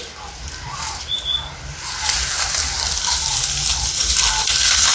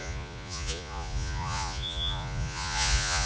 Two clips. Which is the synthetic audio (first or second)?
second